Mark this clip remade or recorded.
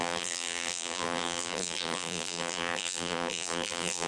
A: remade